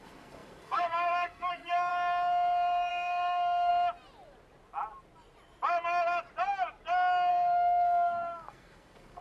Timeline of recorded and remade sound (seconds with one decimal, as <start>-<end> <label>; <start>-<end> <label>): 0.0-1.9 remade; 1.9-2.9 recorded; 2.9-3.7 remade; 3.7-7.3 recorded; 7.3-9.2 remade